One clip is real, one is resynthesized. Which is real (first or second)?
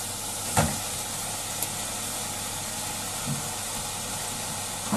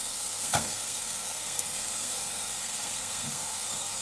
first